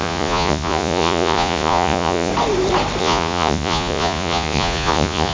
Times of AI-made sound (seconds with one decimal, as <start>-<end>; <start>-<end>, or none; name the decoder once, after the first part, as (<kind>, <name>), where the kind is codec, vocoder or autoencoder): 0.0-2.3 (vocoder, Vocos); 3.0-5.3